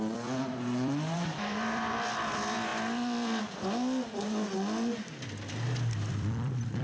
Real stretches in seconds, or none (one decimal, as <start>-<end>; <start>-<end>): 2.7-6.1